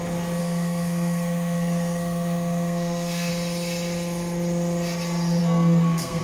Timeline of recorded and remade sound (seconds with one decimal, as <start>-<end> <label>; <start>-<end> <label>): 0.0-0.4 recorded; 0.4-3.3 remade; 3.3-5.4 recorded; 5.4-6.2 remade